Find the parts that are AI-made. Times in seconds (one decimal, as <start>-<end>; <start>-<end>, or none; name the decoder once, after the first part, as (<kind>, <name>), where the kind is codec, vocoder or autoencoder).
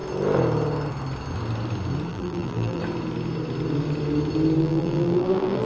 2.1-2.8 (vocoder, BigVGAN v2); 4.6-5.7